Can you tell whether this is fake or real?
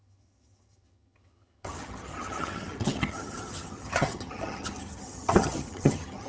fake